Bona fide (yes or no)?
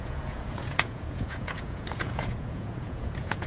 no